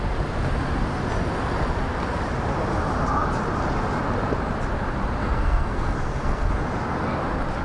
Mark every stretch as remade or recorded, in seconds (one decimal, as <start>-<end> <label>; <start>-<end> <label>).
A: 0.0-5.2 recorded; 5.2-6.5 remade; 6.5-7.6 recorded